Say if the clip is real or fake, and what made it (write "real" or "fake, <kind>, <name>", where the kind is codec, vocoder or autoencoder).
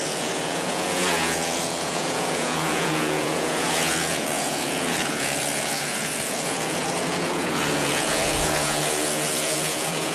fake, vocoder, Vocos